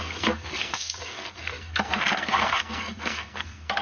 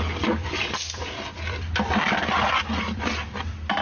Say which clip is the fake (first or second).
first